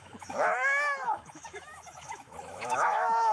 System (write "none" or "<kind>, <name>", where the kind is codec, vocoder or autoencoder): autoencoder, DAC-VAE